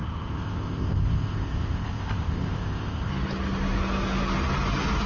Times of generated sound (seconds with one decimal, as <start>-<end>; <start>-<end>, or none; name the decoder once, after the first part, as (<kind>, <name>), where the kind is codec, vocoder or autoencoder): 0.0-3.1 (codec, ZipCodec)